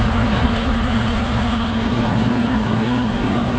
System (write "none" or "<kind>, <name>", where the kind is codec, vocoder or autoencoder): codec, SNAC